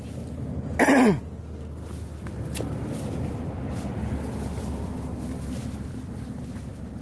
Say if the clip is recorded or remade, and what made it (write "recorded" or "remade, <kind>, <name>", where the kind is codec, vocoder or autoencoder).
recorded